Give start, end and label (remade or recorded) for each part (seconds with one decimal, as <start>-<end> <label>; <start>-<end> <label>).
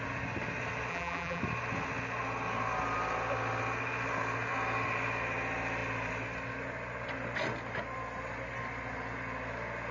0.0-0.9 recorded; 0.9-1.4 remade; 1.4-9.9 recorded